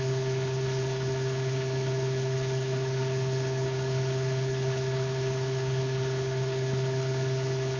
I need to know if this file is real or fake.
fake